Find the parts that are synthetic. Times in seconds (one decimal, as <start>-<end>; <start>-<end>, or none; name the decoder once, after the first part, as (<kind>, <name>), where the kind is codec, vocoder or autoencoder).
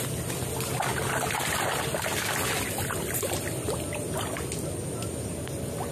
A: none